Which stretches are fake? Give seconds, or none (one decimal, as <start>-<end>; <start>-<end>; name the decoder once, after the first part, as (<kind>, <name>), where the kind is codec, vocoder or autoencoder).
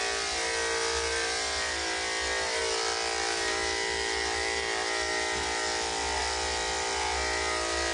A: none